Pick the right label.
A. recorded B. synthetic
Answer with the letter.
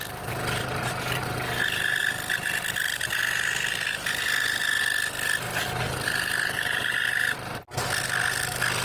A